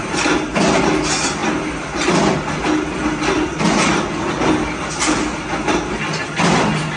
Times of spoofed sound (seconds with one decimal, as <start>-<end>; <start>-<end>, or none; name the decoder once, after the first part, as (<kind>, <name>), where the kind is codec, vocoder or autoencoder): none